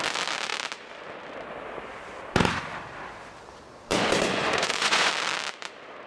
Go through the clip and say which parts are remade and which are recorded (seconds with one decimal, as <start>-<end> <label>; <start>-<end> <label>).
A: 0.0-3.9 recorded; 3.9-5.1 remade; 5.1-6.1 recorded